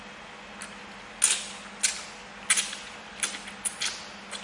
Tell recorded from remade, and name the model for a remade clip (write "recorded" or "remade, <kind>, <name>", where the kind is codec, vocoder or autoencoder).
recorded